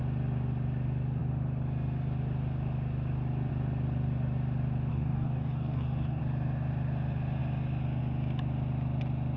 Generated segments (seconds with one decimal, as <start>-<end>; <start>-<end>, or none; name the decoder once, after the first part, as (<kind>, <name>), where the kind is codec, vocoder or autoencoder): 4.9-6.2 (codec, DAC)